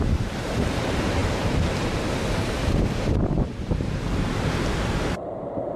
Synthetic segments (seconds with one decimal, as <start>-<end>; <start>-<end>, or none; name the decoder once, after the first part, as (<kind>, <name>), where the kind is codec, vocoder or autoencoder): 0.0-5.8 (vocoder, BigVGAN v2)